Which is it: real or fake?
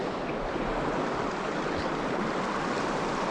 real